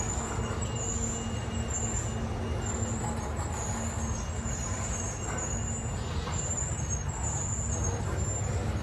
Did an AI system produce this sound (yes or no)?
no